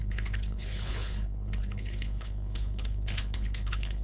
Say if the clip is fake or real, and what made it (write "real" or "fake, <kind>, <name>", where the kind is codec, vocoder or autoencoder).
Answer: fake, codec, HILCodec